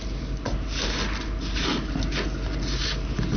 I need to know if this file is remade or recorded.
recorded